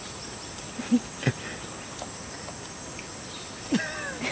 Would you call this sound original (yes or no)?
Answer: yes